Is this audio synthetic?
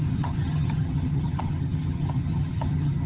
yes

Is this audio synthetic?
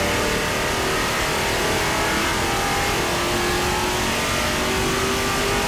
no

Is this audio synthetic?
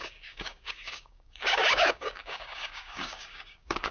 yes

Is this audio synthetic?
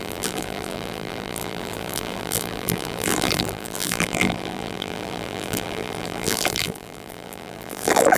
yes